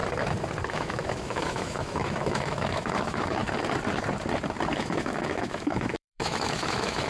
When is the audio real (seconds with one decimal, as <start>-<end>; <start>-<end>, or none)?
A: 0.0-0.7; 3.4-4.8

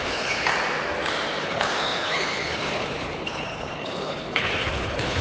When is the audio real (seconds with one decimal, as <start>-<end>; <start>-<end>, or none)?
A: 0.5-1.4

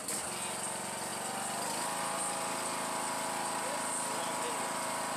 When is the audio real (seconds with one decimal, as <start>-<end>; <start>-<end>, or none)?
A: 0.0-5.2

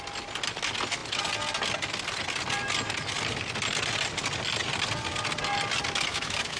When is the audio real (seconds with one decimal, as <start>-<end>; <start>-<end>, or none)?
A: 0.0-6.1

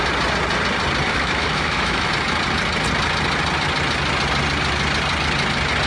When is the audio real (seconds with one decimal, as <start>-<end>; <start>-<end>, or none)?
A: 0.0-1.1; 2.1-5.9

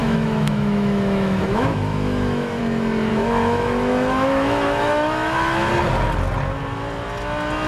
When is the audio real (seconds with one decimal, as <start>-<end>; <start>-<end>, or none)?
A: 2.6-3.1; 5.7-7.7

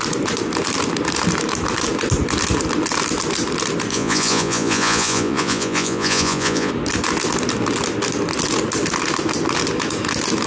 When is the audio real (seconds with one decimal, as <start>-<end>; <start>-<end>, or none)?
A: 0.0-3.9; 6.7-10.5

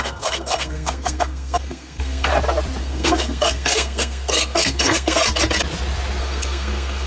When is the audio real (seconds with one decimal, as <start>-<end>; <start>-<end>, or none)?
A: 2.3-2.8; 5.2-6.2